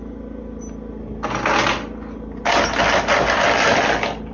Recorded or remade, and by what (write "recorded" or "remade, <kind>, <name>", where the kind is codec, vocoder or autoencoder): recorded